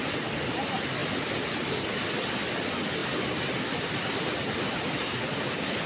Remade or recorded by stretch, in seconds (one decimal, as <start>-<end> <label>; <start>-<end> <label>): 0.0-5.9 recorded